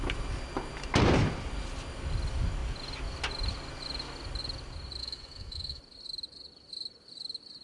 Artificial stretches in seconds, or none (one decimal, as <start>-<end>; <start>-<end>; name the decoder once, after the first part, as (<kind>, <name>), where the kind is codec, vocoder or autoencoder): 5.0-5.8 (autoencoder, DAC-VAE)